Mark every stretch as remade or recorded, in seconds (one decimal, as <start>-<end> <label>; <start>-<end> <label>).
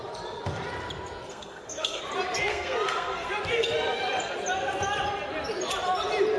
0.0-1.3 recorded; 1.3-2.0 remade; 2.0-2.5 recorded; 2.5-3.3 remade; 3.3-6.4 recorded